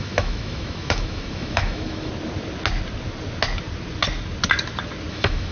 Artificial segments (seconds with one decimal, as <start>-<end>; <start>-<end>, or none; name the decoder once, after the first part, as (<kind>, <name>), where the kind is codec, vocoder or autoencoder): 0.0-2.1 (autoencoder, DAC-VAE); 5.1-5.5